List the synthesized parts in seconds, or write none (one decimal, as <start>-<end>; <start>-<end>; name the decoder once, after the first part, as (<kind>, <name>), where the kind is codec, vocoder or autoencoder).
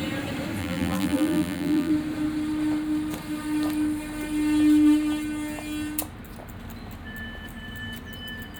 0.6-1.9 (vocoder, BigVGAN v2)